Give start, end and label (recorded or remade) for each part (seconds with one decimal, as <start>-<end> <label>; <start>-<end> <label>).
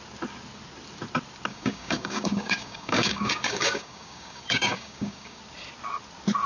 0.0-1.5 recorded; 1.5-5.4 remade; 5.4-6.5 recorded